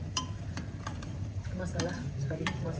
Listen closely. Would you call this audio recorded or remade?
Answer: remade